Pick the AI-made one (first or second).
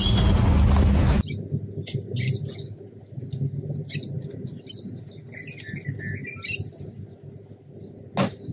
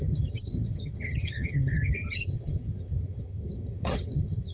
second